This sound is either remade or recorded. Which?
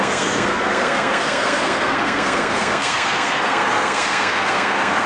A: remade